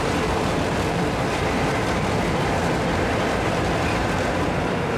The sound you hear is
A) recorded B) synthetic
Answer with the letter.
B